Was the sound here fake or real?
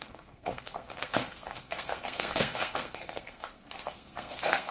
fake